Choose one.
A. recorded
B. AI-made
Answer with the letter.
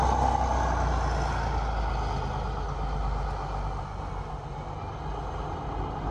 A